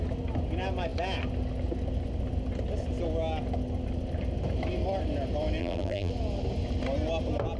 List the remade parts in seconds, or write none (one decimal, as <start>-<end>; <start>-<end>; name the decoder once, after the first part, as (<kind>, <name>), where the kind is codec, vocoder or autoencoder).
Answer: 5.6-6.1 (vocoder, BigVGAN v2)